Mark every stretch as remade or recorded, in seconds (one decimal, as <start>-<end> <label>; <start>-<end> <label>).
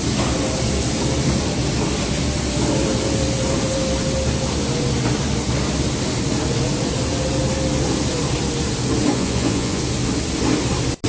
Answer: 0.0-9.1 recorded; 9.1-9.8 remade; 9.8-11.1 recorded